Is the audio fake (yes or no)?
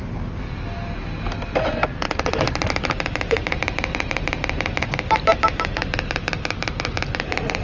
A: no